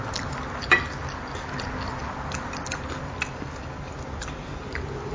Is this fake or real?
real